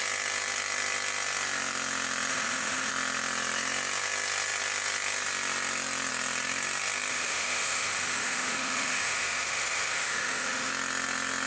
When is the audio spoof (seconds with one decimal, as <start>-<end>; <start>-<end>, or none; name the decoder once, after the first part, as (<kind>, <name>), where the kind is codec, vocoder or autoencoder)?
2.3-2.9 (autoencoder, DAC-VAE); 7.1-10.7